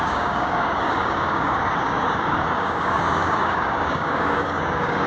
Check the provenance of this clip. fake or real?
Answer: fake